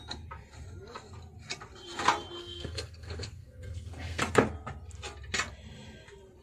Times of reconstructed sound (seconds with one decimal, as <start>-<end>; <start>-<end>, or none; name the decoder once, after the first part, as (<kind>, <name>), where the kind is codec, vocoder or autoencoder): 2.4-4.2 (codec, SNAC)